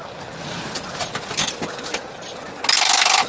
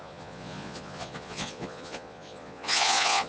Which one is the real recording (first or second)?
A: first